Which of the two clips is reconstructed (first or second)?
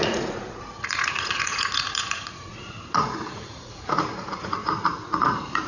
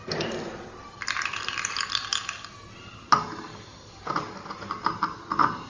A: first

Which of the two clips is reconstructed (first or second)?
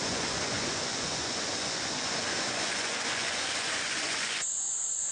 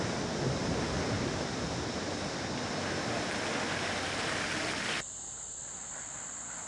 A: first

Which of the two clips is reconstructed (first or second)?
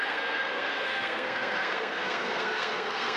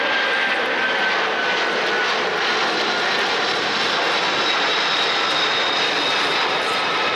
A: first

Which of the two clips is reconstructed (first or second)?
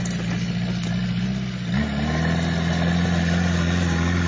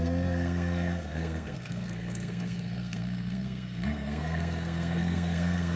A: second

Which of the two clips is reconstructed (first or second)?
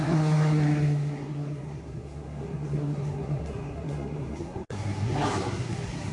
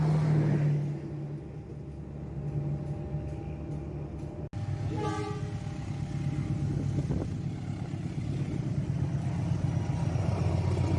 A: first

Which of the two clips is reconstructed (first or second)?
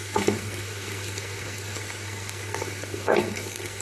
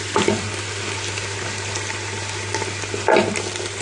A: first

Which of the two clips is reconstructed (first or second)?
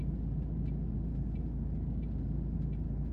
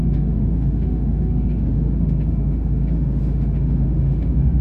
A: second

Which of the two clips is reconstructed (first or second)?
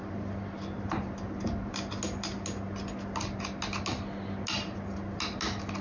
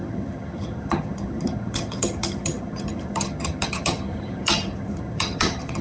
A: second